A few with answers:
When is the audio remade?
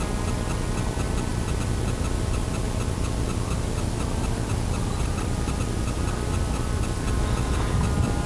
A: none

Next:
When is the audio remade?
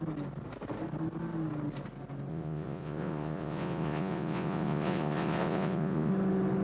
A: 2.3-6.1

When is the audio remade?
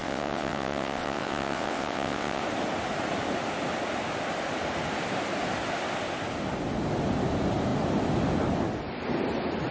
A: 0.0-2.4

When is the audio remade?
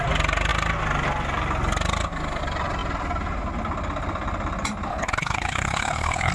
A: 4.9-6.3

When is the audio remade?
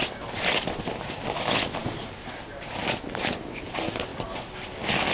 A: 4.1-5.1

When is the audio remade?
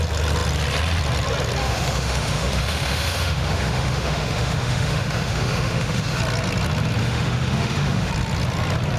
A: 1.6-6.2; 7.0-8.1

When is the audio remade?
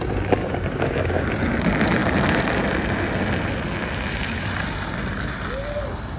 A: 0.4-1.3